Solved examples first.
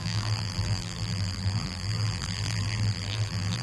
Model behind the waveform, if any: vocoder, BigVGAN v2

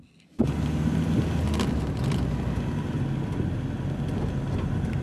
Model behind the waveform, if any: none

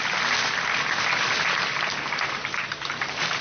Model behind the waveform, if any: none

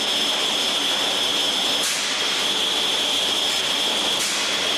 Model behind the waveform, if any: none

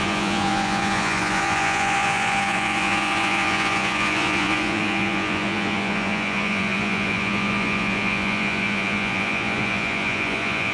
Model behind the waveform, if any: vocoder, Vocos